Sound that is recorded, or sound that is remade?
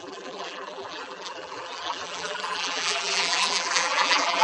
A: remade